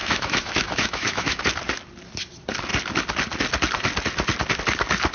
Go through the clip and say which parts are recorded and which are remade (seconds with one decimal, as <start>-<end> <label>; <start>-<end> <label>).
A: 0.0-1.4 remade; 1.4-5.1 recorded